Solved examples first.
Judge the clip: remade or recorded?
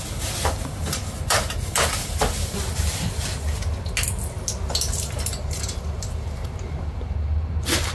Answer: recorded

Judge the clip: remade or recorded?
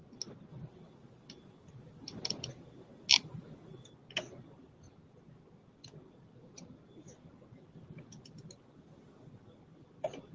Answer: recorded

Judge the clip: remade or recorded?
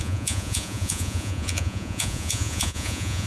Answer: remade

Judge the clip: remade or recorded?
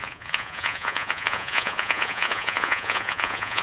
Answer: remade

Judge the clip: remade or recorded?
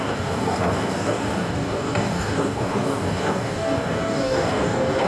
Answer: remade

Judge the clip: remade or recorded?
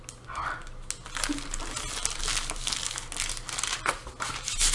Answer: recorded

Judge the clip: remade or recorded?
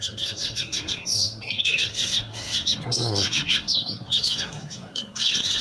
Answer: remade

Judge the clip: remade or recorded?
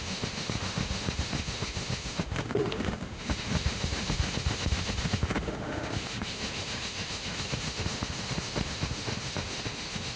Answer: remade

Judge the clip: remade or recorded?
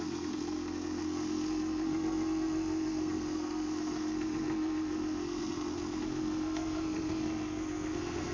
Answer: remade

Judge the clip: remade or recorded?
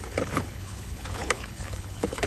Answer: remade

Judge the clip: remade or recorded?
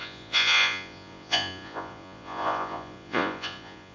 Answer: remade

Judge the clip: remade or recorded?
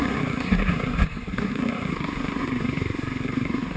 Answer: remade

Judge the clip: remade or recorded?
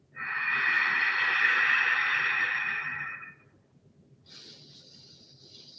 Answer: recorded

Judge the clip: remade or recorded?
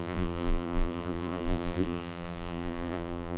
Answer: remade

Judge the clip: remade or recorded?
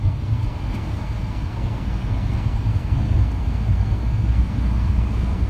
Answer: remade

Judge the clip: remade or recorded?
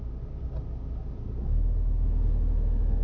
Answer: recorded